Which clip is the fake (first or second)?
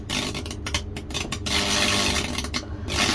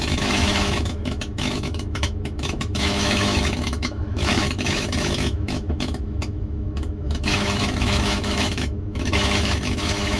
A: second